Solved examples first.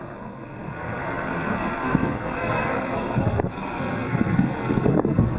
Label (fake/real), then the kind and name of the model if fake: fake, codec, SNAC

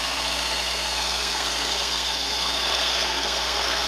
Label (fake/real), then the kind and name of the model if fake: fake, codec, SNAC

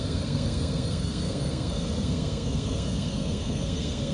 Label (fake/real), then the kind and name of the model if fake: fake, codec, SNAC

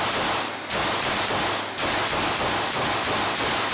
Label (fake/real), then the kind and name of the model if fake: real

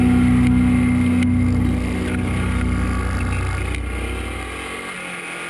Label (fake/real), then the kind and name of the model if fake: real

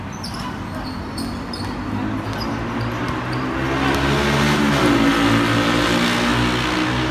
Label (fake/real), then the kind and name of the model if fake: real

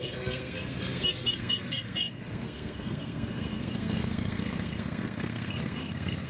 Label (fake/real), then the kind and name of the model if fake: fake, codec, SNAC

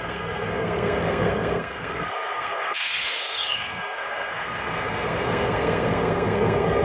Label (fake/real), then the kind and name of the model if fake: fake, codec, SNAC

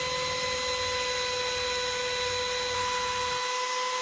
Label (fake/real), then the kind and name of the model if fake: real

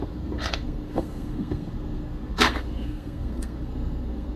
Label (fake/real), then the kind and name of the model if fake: fake, codec, SNAC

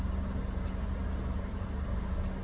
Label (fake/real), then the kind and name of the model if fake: real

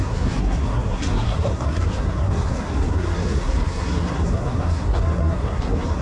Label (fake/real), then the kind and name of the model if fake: fake, codec, SNAC